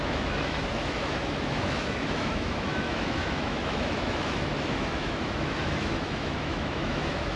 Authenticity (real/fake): fake